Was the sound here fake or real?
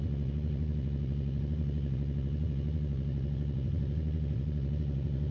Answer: fake